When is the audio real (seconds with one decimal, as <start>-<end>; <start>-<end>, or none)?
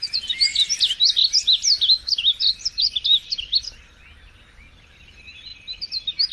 0.0-6.3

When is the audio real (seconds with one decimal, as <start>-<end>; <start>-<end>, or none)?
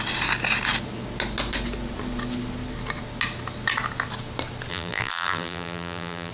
0.0-4.7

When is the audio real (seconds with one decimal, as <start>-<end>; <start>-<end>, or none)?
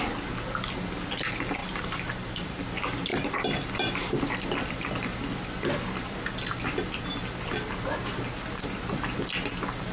0.0-1.6; 2.6-3.1; 4.1-9.9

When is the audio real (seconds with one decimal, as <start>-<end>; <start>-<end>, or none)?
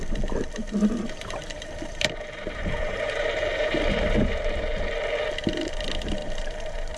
0.0-0.6; 4.8-6.2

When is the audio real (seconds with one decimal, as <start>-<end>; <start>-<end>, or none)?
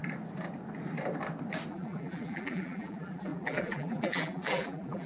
0.0-1.7